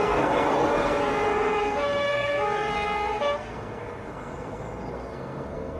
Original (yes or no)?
no